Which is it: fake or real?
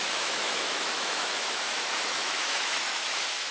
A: fake